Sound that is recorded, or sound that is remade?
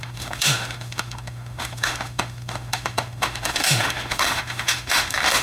remade